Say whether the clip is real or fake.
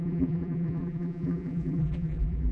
fake